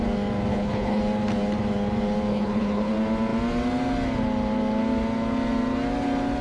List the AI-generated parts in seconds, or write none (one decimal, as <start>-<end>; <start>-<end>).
0.5-1.0; 2.3-2.9